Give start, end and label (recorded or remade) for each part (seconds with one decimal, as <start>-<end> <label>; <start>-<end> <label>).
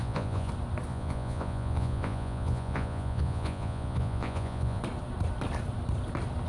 0.0-0.5 remade; 0.5-0.9 recorded; 0.9-4.8 remade; 4.8-6.5 recorded